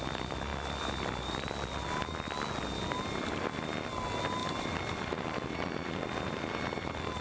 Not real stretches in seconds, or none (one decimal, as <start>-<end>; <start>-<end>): 4.4-5.2